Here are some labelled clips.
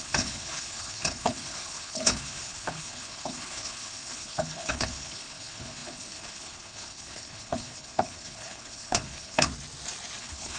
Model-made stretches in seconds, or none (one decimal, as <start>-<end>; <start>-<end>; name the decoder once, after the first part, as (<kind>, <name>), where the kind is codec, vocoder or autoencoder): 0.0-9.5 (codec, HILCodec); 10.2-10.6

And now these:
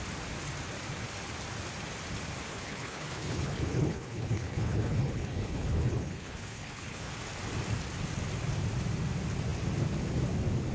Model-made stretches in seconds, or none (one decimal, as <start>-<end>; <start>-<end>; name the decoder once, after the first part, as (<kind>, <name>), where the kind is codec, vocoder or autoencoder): 2.5-7.1 (codec, HILCodec)

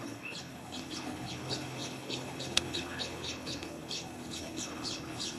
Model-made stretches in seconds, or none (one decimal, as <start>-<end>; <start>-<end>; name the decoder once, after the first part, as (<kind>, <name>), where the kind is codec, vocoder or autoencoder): 0.0-5.4 (codec, HILCodec)

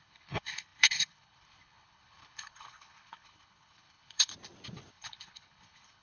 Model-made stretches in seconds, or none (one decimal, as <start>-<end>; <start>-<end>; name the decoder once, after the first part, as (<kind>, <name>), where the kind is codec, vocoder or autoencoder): 0.0-4.3 (codec, HILCodec); 4.9-6.0

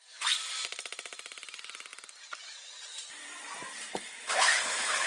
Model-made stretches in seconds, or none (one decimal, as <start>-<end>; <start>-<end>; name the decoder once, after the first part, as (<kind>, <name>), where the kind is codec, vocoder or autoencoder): 3.9-5.1 (codec, HILCodec)

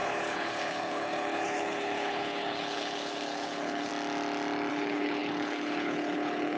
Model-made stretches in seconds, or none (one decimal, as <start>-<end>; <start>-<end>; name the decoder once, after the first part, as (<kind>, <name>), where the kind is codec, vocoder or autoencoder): 0.0-3.9 (codec, HILCodec); 4.7-6.6

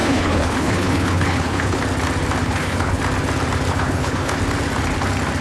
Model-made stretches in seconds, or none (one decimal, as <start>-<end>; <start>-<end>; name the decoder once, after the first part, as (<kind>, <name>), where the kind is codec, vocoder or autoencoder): 0.0-1.8 (codec, HILCodec); 2.4-3.0; 3.7-4.4